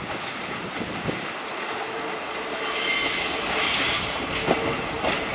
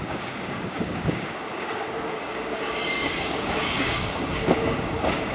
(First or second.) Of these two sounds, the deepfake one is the second